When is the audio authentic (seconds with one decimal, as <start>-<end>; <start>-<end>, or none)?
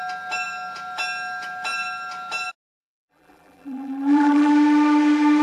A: 0.0-2.8; 4.5-5.4